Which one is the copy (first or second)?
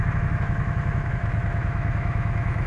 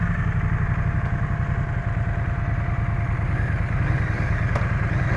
first